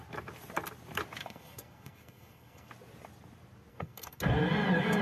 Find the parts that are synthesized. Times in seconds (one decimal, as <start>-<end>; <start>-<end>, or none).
1.2-2.7; 3.7-4.2

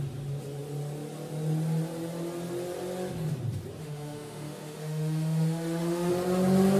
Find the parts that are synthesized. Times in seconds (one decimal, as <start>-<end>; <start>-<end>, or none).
3.8-6.1

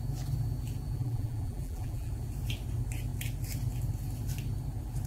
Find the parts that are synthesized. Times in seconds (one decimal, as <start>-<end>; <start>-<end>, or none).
1.0-2.1

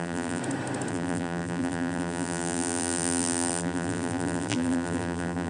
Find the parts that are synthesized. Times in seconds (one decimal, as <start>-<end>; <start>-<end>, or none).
0.0-0.4; 0.9-5.5

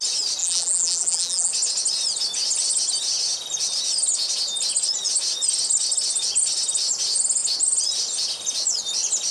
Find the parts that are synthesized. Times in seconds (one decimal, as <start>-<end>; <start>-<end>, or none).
0.4-1.5

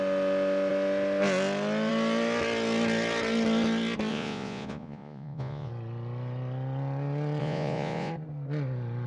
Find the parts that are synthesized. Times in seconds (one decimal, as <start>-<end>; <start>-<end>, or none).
4.1-5.7; 7.4-8.1

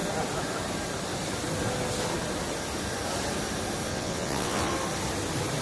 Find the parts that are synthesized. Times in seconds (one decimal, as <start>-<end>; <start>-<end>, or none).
3.9-4.7